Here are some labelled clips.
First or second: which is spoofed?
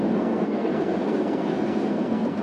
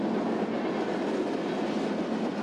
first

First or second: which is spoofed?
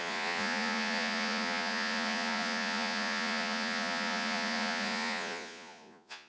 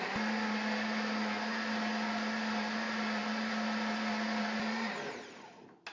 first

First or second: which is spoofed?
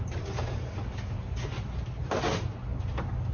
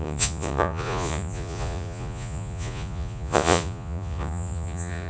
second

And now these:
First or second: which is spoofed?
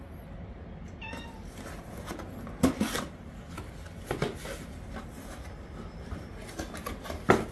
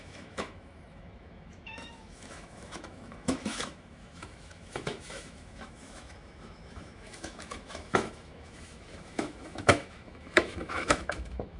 second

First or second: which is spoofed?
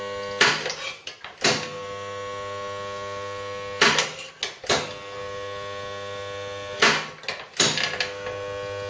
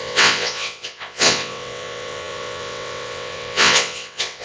second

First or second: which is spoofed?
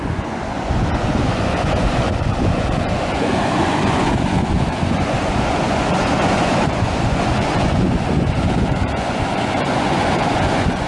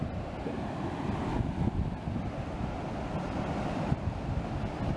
first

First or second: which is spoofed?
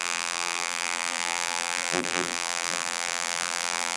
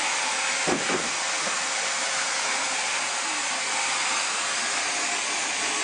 first